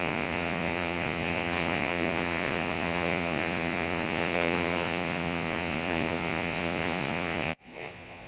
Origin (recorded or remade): remade